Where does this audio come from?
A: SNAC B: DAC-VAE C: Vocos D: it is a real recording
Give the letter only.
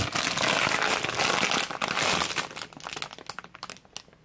D